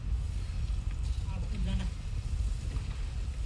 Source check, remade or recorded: recorded